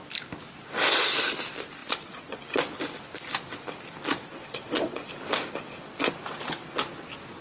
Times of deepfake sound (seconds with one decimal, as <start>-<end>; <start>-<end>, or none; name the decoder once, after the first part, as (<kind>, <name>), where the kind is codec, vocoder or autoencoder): 1.8-2.4 (vocoder, Vocos); 4.4-5.1